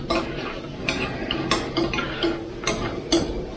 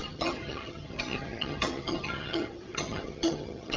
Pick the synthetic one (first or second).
second